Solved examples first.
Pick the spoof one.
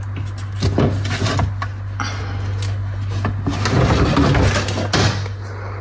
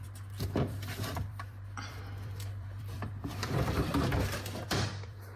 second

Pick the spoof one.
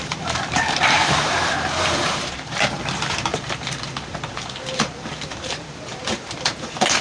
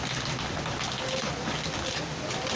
first